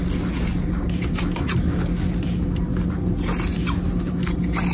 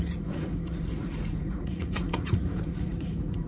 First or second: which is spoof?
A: second